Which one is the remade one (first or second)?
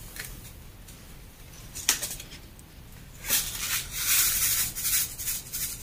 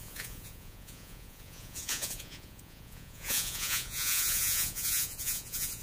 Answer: second